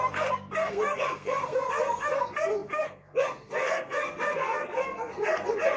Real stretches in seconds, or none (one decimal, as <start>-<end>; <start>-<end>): none